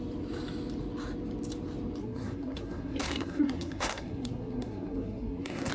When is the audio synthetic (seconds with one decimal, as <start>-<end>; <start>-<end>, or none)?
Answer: 2.0-5.7